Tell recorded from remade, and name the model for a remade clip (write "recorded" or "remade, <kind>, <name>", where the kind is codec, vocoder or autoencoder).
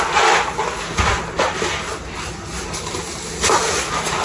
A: recorded